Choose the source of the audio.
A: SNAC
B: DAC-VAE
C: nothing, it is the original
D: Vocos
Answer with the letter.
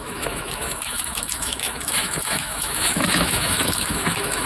B